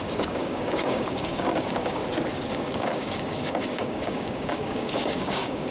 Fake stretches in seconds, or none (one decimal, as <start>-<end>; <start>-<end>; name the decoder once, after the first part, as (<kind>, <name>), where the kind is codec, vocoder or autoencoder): 0.0-2.0 (codec, DAC); 2.5-5.7